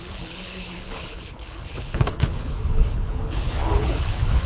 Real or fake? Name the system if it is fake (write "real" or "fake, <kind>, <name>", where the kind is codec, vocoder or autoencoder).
fake, codec, HILCodec